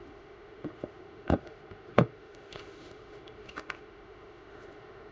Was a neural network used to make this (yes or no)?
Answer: yes